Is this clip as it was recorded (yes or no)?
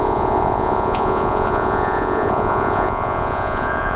no